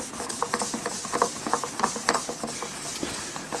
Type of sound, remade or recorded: recorded